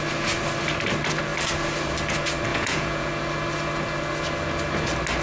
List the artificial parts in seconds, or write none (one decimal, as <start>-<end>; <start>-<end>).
2.5-3.1